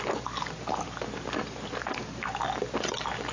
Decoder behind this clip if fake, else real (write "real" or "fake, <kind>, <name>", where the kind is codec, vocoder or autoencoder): real